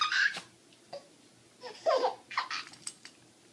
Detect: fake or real real